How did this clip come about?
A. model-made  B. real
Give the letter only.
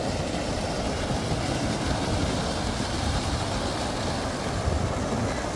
B